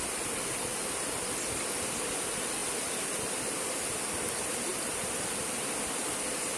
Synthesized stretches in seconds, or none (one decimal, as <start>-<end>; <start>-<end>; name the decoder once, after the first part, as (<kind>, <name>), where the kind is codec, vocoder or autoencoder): 0.7-1.9 (vocoder, BigVGAN v2); 4.7-5.3

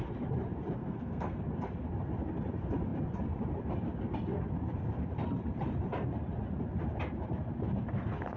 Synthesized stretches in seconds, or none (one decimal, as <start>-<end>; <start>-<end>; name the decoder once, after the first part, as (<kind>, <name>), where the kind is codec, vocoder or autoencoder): 0.8-1.4 (codec, SNAC)

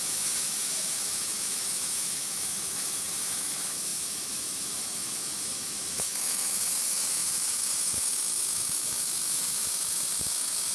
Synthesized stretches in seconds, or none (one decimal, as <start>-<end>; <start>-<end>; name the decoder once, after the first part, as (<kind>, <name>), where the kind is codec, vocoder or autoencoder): 0.0-10.7 (autoencoder, DAC-VAE)

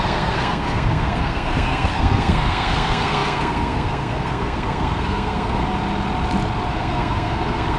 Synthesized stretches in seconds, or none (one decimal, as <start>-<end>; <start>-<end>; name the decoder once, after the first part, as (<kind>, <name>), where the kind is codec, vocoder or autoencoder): 0.0-5.6 (codec, SNAC); 6.7-7.8

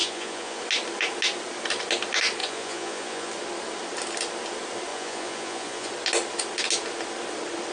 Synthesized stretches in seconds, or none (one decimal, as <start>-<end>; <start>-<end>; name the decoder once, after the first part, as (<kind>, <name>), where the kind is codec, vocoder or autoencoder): 0.0-0.6 (vocoder, Vocos); 2.4-3.3; 4.9-5.9

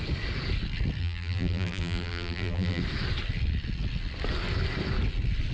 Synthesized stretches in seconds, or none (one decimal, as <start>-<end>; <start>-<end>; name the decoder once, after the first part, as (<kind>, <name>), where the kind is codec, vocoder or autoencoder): 1.0-2.8 (vocoder, BigVGAN v2)

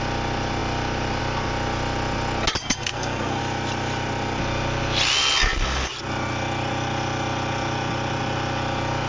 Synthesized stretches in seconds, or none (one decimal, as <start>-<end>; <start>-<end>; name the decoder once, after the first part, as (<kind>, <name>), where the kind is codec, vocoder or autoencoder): 2.6-3.4 (codec, SNAC)

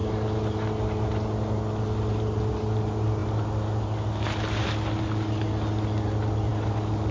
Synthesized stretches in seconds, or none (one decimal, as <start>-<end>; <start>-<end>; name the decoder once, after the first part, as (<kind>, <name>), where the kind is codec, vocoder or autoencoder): none